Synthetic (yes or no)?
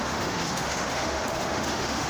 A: yes